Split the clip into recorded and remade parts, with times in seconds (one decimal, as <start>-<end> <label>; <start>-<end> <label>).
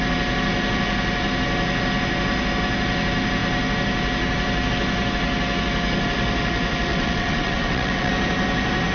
0.0-6.9 recorded; 6.9-8.1 remade; 8.1-8.9 recorded